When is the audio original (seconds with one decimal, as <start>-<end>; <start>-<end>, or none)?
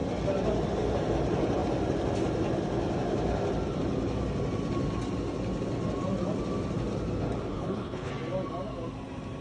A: 0.0-7.5; 8.1-9.4